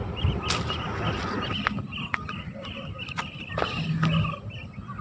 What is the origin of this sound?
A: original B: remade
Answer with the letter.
A